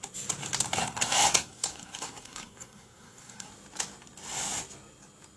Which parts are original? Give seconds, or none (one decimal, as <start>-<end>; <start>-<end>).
0.0-0.8; 3.5-5.4